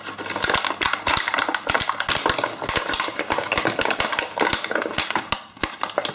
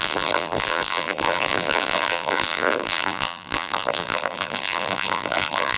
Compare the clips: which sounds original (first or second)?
first